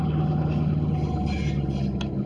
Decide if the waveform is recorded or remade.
recorded